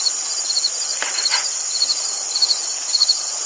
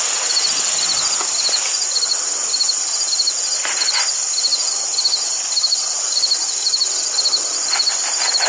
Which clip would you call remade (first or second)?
first